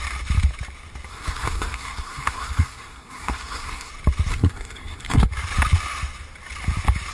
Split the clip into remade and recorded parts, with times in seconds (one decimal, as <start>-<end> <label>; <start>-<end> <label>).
0.0-1.1 recorded; 1.1-3.9 remade; 3.9-4.3 recorded; 4.3-5.3 remade; 5.3-7.1 recorded